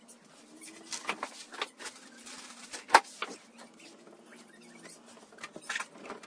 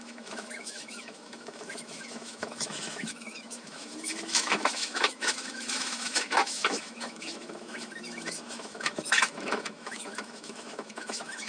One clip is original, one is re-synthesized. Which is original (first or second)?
first